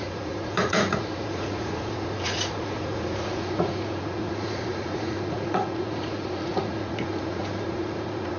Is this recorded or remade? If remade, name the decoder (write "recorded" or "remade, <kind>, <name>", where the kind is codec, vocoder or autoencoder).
remade, vocoder, Vocos